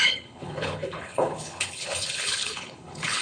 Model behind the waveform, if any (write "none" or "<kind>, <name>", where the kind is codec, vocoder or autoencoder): codec, HILCodec